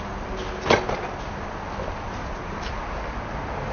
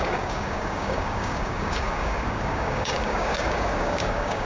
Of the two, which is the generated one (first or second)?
second